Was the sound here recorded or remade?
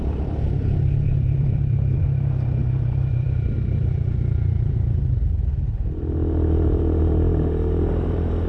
remade